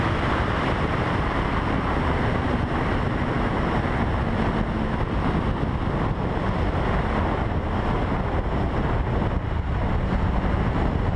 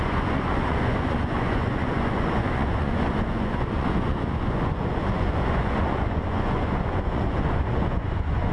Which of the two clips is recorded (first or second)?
first